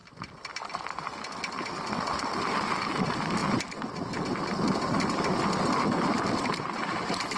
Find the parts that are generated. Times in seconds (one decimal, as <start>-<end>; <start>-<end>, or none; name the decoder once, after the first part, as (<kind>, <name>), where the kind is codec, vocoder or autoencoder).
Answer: 0.0-3.4 (vocoder, BigVGAN v2); 5.6-7.4